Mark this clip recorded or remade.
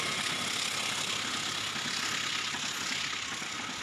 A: recorded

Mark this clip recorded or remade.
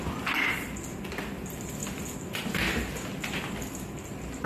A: recorded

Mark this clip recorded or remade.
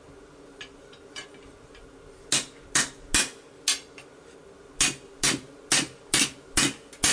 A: recorded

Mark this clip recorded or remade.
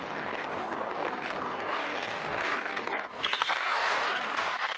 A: remade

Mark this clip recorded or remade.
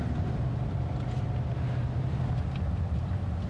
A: recorded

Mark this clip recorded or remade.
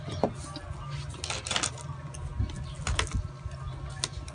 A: recorded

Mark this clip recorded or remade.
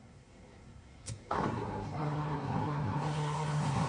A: remade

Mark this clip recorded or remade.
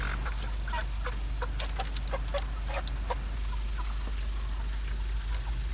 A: recorded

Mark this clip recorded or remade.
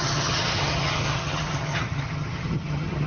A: remade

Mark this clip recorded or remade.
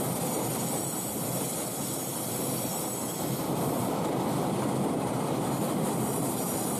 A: remade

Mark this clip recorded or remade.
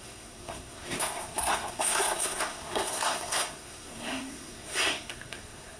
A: remade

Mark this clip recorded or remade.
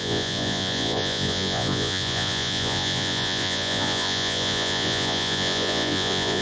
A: remade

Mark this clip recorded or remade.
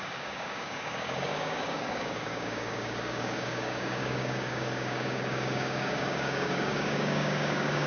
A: remade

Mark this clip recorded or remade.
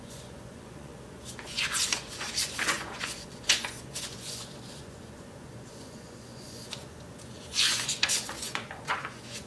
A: remade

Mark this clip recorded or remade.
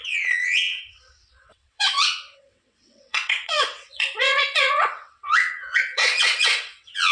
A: remade